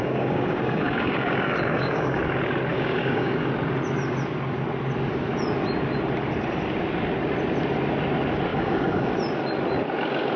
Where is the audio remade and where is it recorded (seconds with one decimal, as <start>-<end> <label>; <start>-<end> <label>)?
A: 0.0-2.2 remade; 2.2-2.7 recorded; 2.7-3.5 remade; 3.5-8.5 recorded; 8.5-9.1 remade; 9.1-10.4 recorded